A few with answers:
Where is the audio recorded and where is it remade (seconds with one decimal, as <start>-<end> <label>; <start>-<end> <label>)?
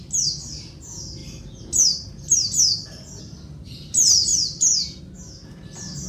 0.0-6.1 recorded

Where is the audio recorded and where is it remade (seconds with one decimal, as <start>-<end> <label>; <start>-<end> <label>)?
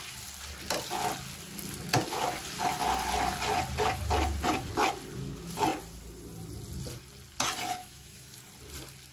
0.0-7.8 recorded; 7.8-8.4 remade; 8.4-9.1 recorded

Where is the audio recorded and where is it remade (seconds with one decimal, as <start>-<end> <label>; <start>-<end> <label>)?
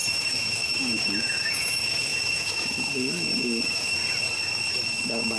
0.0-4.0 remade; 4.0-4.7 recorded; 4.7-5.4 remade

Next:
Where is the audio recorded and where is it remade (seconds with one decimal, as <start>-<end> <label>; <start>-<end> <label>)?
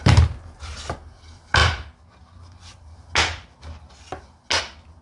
0.0-5.0 recorded